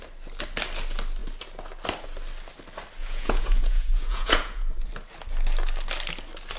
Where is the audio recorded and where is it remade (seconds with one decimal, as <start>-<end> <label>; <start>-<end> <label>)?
0.0-3.0 recorded; 3.0-4.9 remade; 4.9-6.6 recorded